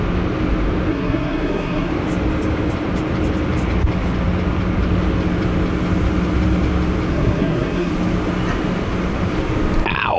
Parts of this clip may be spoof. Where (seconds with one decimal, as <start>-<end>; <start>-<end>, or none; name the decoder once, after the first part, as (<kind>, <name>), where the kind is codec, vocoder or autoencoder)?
0.9-1.9 (codec, SNAC); 7.1-7.9

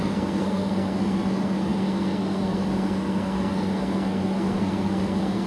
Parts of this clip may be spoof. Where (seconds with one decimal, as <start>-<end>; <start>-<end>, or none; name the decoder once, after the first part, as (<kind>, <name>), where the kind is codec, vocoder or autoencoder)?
0.0-5.5 (codec, SNAC)